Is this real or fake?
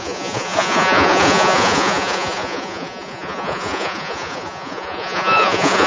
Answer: fake